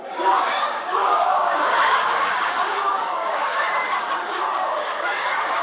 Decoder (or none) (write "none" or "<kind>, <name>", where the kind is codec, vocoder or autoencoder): codec, DAC